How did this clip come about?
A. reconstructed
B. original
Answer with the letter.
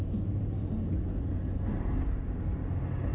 B